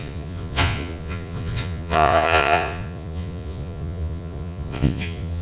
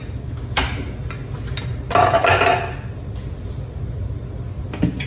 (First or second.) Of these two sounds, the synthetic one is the first